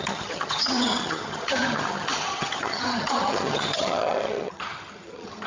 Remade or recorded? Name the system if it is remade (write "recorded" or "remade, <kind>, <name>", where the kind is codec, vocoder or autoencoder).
remade, vocoder, HiFi-GAN